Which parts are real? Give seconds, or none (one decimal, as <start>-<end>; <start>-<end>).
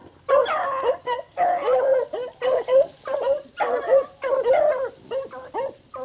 0.0-6.0